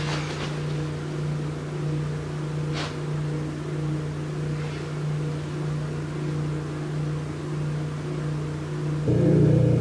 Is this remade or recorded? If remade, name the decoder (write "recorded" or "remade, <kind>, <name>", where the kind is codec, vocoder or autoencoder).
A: recorded